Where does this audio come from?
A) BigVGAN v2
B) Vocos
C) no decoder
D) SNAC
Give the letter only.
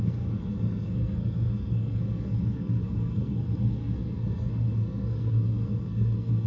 D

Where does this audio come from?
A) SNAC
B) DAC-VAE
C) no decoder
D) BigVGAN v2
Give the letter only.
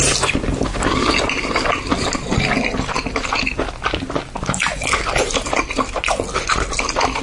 C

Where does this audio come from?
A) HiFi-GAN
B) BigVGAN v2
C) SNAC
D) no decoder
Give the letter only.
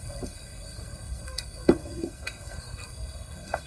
C